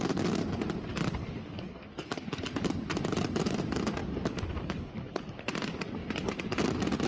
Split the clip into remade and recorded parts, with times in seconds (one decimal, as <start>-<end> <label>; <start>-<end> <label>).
0.0-0.9 recorded; 0.9-2.2 remade; 2.2-4.0 recorded; 4.0-5.4 remade; 5.4-7.1 recorded